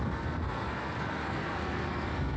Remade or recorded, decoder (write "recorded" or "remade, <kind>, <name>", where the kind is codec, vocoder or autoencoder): remade, codec, SNAC